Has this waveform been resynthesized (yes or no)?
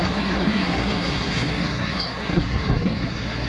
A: yes